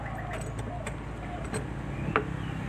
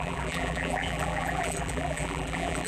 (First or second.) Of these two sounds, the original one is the first